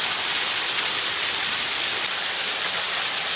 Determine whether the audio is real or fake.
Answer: real